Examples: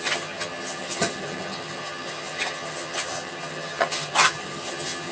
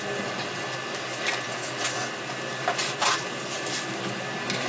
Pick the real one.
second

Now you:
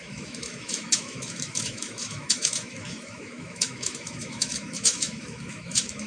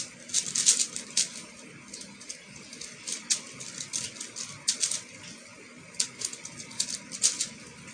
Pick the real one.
second